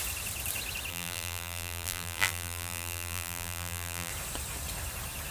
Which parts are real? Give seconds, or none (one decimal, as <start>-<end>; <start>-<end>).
0.0-0.9; 4.1-5.3